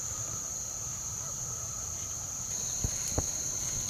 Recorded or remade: remade